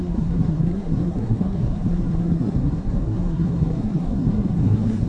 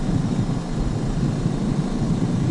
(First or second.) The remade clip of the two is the first